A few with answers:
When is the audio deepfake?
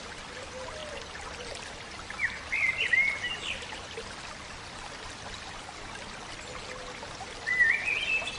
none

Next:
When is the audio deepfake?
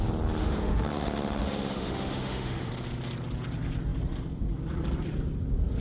0.4-2.7 (autoencoder, DAC-VAE)